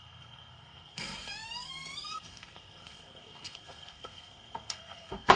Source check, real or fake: fake